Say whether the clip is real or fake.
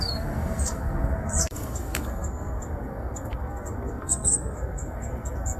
fake